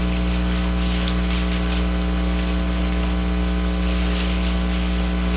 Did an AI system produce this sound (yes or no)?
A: no